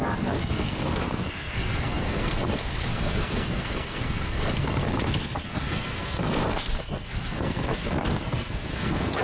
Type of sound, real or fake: fake